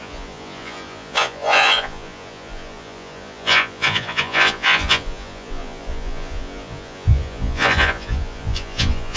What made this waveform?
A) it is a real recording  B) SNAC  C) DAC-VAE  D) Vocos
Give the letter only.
D